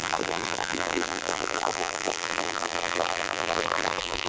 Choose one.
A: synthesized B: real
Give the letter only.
A